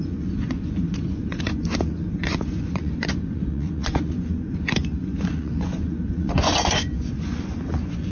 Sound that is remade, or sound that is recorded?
remade